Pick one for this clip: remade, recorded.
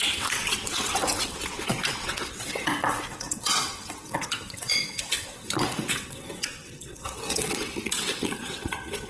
remade